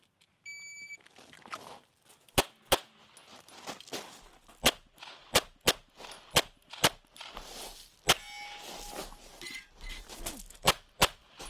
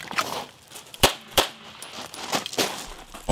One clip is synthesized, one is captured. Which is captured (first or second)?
first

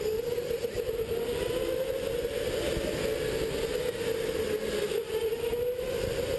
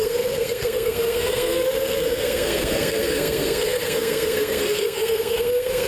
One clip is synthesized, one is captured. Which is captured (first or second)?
first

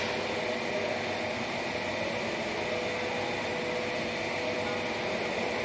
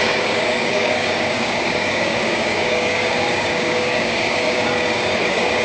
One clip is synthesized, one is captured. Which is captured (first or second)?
first